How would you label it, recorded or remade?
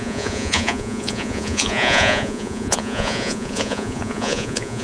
remade